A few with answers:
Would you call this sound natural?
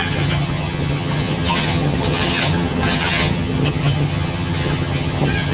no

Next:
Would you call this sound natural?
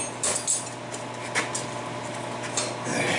yes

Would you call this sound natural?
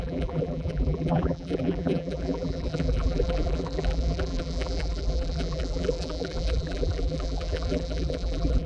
no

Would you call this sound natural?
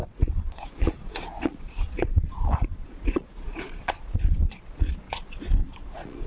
no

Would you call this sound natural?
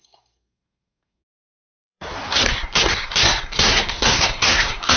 no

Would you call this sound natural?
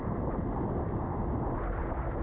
yes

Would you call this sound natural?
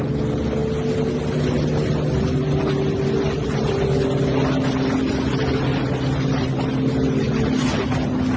yes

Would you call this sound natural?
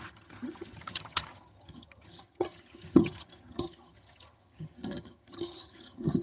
no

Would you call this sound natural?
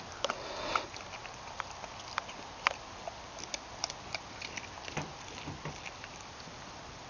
yes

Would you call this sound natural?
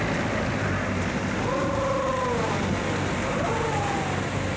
yes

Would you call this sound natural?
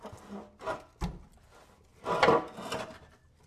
yes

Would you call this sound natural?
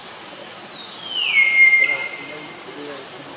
yes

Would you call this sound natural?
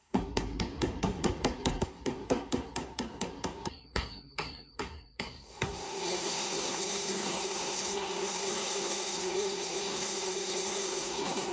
no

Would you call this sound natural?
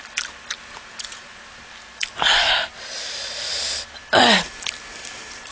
yes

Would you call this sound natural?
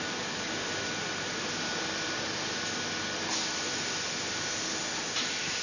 yes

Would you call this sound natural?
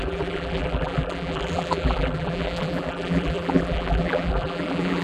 no